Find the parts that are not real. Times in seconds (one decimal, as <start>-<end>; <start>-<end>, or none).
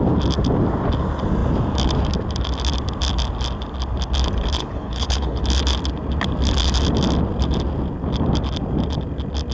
4.6-5.4